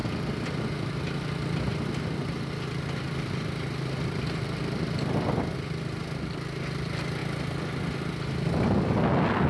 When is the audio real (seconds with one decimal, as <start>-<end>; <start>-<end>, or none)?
0.0-9.5